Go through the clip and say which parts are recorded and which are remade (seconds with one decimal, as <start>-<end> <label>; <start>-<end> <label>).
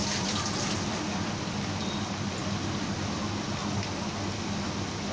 0.0-1.3 remade; 1.3-2.4 recorded; 2.4-3.2 remade; 3.2-5.1 recorded